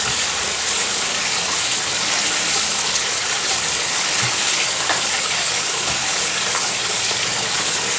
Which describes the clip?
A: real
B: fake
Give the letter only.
B